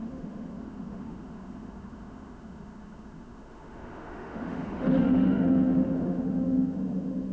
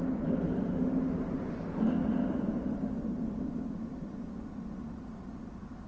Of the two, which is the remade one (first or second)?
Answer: first